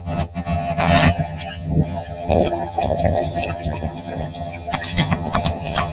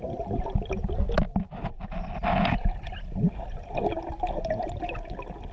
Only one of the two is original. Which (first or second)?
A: second